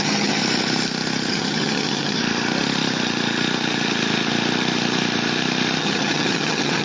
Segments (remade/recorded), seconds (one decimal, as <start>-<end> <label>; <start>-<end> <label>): 0.0-0.4 remade; 0.4-1.3 recorded; 1.3-2.2 remade; 2.2-5.8 recorded; 5.8-6.8 remade